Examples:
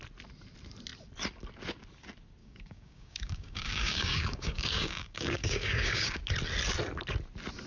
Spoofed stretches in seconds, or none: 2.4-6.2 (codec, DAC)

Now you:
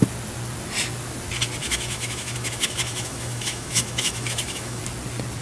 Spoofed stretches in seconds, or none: 1.6-4.8 (autoencoder, DAC-VAE)

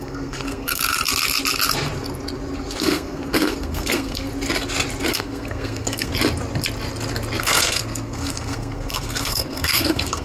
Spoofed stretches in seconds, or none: 0.0-0.8 (codec, SNAC); 2.8-4.3; 5.1-6.1; 7.4-10.2